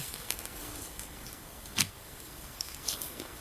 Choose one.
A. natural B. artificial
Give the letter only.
B